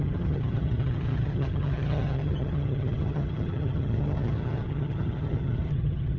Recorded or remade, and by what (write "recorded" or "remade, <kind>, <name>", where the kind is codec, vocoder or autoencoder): remade, vocoder, HiFi-GAN